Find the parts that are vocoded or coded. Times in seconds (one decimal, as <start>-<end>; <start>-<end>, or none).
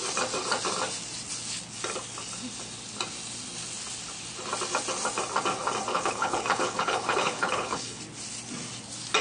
5.9-8.0